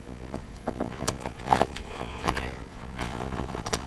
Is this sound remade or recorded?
remade